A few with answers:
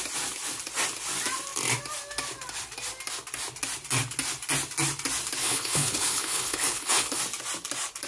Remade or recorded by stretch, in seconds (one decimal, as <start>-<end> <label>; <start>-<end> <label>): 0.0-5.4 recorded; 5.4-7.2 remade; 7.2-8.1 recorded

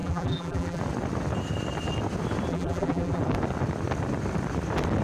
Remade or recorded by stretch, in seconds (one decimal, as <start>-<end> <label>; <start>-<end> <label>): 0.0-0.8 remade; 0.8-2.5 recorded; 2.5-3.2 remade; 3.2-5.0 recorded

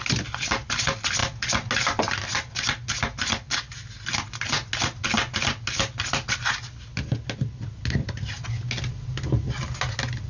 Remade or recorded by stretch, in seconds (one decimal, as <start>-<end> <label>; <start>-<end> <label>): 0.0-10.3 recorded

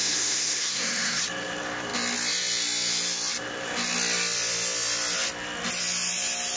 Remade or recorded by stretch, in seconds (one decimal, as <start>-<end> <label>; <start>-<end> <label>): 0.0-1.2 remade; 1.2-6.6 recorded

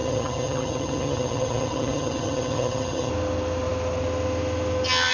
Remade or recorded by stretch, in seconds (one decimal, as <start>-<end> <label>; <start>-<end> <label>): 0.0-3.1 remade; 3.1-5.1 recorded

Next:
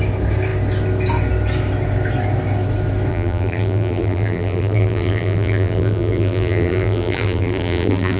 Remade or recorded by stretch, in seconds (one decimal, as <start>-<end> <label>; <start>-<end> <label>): 0.0-3.1 recorded; 3.1-8.2 remade